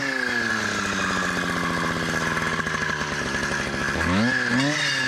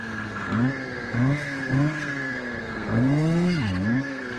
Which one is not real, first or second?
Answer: second